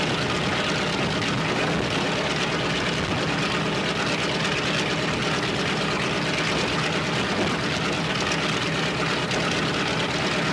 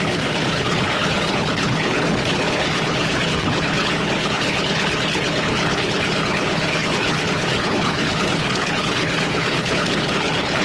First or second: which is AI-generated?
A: second